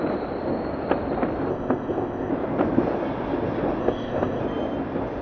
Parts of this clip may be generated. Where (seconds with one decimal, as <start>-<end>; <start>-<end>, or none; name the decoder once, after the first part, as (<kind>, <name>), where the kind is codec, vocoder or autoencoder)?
1.5-2.3 (codec, ZipCodec); 3.8-4.4

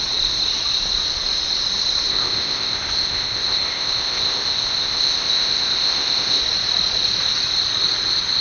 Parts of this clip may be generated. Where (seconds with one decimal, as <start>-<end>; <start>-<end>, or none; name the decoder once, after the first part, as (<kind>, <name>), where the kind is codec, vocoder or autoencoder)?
2.1-6.4 (codec, ZipCodec)

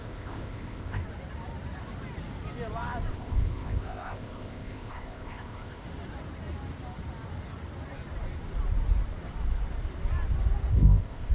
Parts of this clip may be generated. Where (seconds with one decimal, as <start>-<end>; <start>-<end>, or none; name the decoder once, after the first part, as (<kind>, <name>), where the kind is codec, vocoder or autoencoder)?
0.0-1.0 (codec, ZipCodec); 3.1-5.8; 10.7-11.3

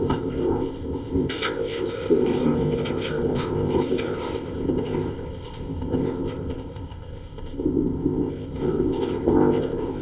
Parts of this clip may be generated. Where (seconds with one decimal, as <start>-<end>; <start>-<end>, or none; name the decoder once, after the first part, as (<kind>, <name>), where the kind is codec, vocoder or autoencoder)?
0.0-10.0 (codec, ZipCodec)